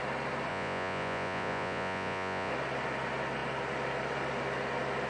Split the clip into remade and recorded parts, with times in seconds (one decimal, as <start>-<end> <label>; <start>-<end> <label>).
0.0-0.5 recorded; 0.5-2.5 remade; 2.5-5.1 recorded